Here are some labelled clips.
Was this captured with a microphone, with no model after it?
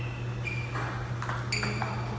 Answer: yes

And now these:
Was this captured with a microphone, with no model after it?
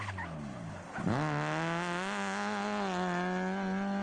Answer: yes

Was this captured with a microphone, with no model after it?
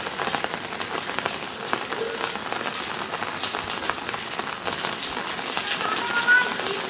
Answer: yes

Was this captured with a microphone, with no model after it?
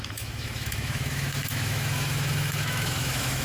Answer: no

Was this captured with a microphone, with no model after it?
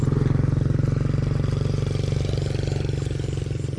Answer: yes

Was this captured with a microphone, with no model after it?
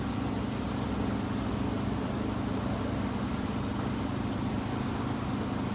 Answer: yes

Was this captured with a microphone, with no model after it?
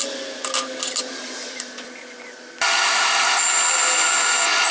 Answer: yes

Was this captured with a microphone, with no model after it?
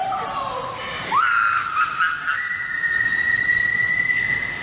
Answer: no